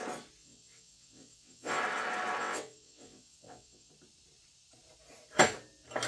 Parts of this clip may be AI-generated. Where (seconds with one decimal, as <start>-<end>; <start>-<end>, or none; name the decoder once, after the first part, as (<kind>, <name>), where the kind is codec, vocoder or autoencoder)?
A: 0.4-1.8 (vocoder, WaveNeXt); 2.4-3.9